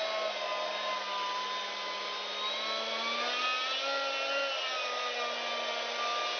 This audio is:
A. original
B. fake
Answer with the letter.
A